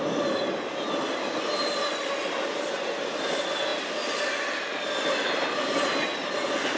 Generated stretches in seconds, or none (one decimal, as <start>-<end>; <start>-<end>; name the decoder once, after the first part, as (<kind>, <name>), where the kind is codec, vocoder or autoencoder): none